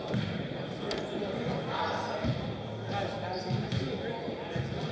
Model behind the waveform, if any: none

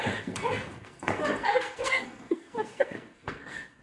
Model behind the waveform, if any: codec, SNAC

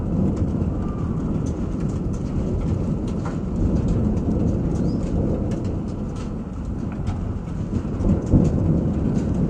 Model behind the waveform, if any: none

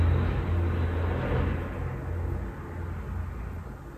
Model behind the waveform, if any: none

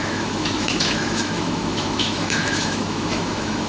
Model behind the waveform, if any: autoencoder, DAC-VAE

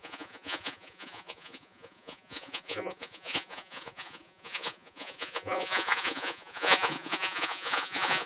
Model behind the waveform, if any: vocoder, Vocos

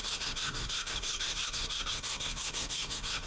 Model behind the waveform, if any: codec, SNAC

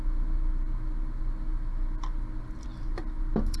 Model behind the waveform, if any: none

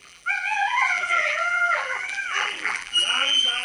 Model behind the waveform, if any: vocoder, BigVGAN v2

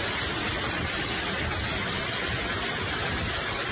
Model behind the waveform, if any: vocoder, BigVGAN v2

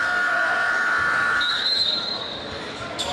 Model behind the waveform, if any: codec, DAC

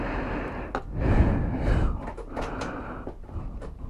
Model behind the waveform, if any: none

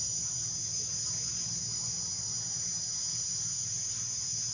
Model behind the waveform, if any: none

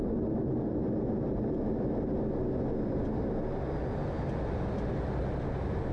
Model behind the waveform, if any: none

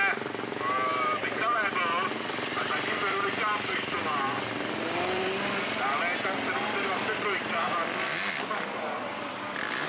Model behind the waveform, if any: none